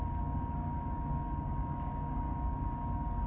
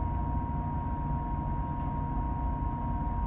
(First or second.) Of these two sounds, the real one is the second